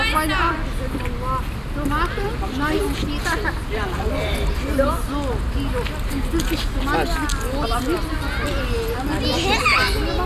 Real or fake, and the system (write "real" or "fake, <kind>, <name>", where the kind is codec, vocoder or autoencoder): real